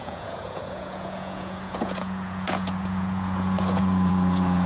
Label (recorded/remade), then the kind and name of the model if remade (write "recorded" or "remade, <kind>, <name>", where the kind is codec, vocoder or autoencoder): remade, vocoder, Vocos